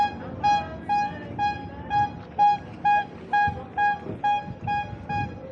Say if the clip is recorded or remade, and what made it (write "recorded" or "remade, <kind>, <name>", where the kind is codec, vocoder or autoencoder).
recorded